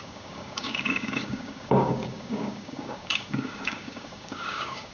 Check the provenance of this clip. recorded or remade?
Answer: remade